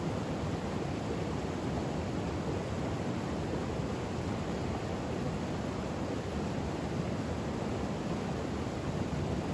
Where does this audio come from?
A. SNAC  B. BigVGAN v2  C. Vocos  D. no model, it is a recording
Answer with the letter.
D